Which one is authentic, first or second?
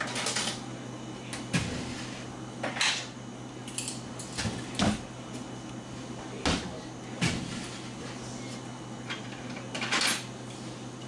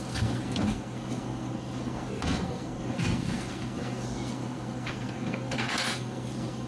first